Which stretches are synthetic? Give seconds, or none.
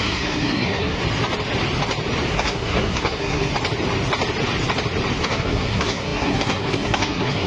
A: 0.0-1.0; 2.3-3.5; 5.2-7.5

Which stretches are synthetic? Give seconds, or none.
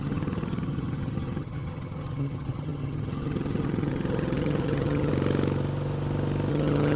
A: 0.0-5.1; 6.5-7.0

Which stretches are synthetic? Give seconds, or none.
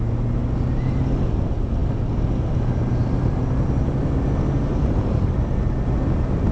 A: 4.7-5.2